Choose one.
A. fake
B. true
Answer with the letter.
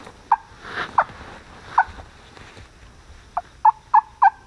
B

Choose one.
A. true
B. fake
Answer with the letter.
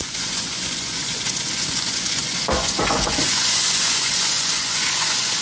B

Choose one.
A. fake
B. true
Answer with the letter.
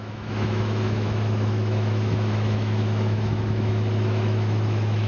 A